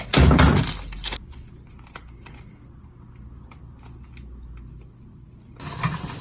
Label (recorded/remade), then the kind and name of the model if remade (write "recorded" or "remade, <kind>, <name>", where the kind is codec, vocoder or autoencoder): recorded